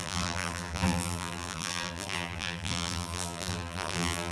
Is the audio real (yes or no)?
no